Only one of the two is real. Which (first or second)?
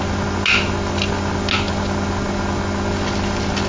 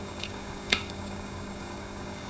first